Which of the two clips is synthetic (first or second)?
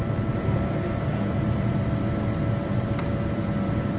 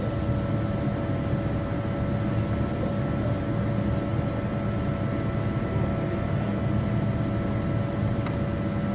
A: first